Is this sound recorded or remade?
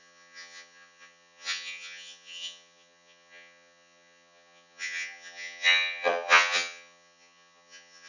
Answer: remade